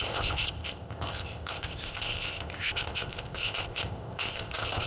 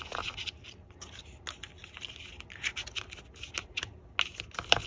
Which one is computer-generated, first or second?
first